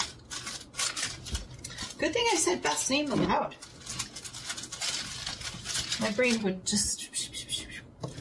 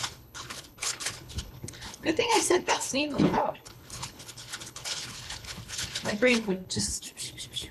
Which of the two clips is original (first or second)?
first